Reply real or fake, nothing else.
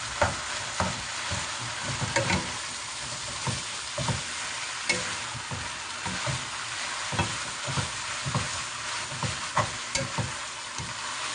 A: real